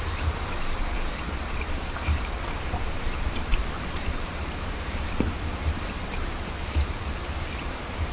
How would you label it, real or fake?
fake